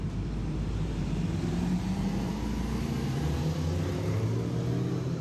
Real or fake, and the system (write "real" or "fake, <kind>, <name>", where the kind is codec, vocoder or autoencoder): real